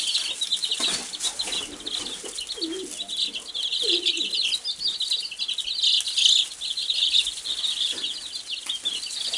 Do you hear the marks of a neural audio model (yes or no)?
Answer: no